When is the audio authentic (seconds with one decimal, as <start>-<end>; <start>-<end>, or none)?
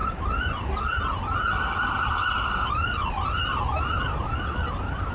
0.0-5.1